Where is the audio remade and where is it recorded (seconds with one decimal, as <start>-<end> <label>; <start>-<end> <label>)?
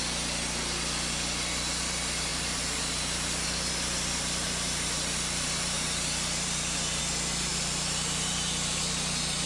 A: 0.0-2.3 recorded; 2.3-7.0 remade; 7.0-7.5 recorded; 7.5-8.8 remade; 8.8-9.5 recorded